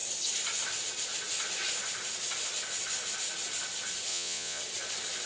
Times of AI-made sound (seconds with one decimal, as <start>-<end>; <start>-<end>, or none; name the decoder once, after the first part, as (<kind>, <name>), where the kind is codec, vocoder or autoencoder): 4.1-4.6 (vocoder, Vocos)